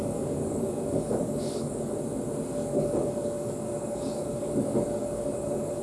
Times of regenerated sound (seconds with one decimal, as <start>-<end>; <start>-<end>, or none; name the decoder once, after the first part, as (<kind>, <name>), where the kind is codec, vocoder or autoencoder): 0.0-2.0 (codec, DAC); 2.6-5.8

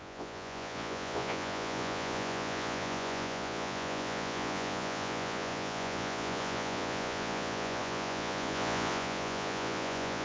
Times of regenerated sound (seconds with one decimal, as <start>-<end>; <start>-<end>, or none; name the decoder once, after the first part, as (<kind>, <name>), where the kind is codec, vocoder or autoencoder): 0.0-10.2 (vocoder, Vocos)

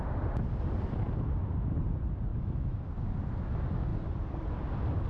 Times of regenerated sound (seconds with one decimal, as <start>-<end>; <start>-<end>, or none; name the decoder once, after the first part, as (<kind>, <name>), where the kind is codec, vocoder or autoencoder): 2.3-2.8 (autoencoder, DAC-VAE)

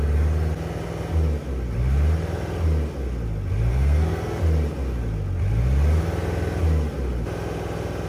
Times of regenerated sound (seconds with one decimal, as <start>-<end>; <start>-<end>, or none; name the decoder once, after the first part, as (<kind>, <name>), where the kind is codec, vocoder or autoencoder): 3.7-4.4 (codec, SNAC)

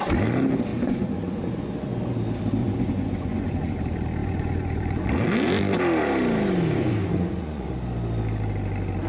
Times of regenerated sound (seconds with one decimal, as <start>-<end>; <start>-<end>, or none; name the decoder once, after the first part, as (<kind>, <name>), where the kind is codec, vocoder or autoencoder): 0.7-2.0 (vocoder, Vocos); 2.6-3.8; 4.2-5.1; 7.1-7.7

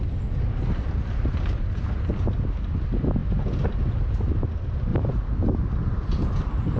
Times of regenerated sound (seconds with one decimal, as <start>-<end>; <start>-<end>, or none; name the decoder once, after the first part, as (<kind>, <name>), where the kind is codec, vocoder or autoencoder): 4.9-6.8 (vocoder, BigVGAN v2)

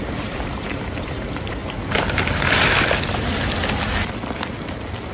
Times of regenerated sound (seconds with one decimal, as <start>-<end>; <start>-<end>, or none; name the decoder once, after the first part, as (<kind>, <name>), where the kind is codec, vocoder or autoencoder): 0.0-1.6 (vocoder, BigVGAN v2)

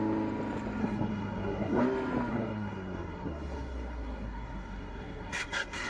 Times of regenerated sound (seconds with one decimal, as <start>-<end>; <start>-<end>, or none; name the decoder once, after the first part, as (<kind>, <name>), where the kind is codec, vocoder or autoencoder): 0.8-1.8 (codec, SNAC); 2.3-5.9